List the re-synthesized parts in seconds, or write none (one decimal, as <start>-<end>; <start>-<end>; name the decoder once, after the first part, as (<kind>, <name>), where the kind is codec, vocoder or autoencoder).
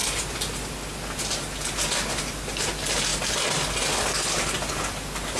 none